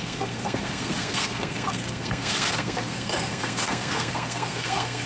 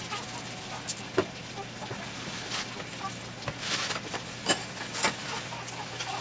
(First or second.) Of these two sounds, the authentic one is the second